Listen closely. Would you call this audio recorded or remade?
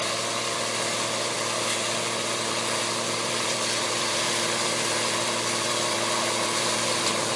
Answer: remade